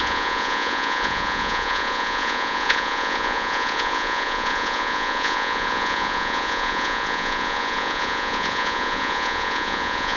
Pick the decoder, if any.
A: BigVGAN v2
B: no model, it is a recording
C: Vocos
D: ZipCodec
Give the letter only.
C